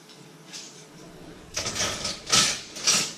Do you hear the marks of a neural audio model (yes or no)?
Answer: yes